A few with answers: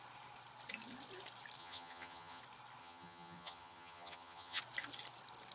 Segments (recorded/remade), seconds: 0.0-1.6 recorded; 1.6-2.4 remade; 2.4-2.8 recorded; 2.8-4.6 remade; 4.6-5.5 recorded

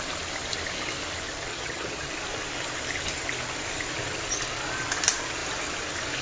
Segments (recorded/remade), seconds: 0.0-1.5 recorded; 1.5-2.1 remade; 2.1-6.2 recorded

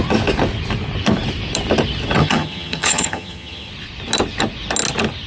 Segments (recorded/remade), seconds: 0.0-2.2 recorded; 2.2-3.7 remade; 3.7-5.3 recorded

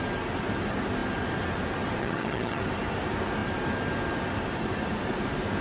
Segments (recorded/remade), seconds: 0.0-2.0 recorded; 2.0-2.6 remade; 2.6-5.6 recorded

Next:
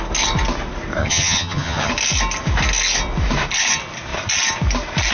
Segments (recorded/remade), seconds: 0.0-1.0 recorded; 1.0-1.9 remade; 1.9-5.1 recorded